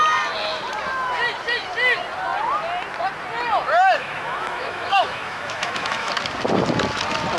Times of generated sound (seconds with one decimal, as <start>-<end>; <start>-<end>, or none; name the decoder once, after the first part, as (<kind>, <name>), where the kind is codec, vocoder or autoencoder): 4.0-6.1 (autoencoder, DAC-VAE)